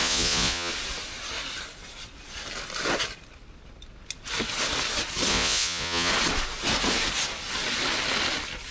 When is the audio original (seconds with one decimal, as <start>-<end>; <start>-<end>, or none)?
0.7-5.3; 6.1-8.7